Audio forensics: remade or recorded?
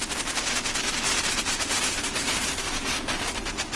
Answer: recorded